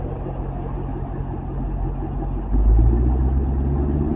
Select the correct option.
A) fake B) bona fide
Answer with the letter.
B